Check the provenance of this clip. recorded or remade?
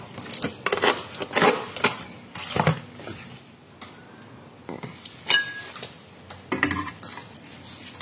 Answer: recorded